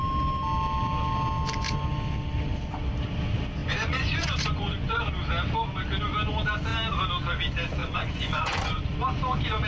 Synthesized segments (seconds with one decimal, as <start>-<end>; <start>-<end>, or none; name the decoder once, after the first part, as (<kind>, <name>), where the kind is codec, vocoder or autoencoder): 3.6-5.0 (vocoder, Vocos); 7.8-8.8